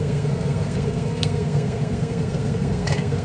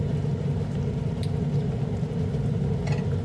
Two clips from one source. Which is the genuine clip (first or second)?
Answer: second